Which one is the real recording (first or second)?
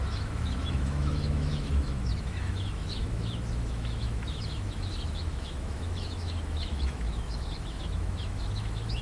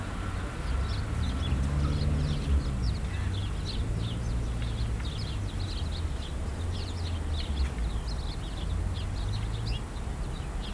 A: second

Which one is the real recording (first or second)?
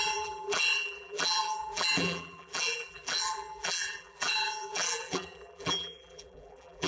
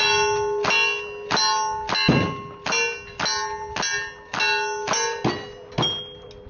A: second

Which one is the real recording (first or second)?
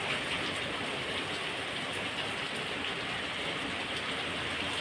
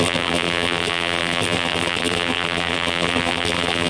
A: first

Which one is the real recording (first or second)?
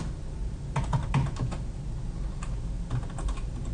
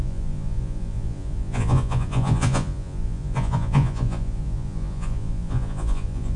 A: first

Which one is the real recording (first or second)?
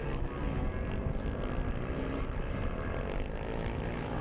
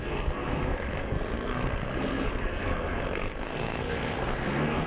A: first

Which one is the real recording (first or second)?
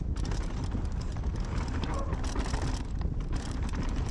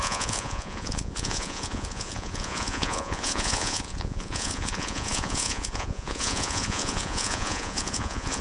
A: first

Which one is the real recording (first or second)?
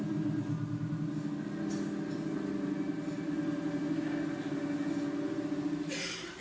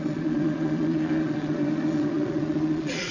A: first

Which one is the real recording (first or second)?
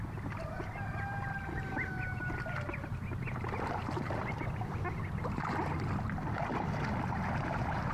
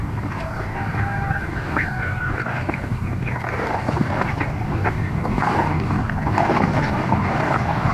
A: first